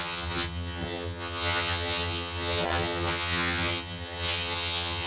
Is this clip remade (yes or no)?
yes